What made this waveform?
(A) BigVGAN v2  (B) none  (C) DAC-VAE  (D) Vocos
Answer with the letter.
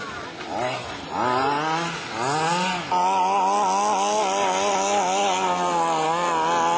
B